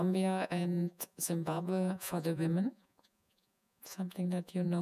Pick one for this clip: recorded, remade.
remade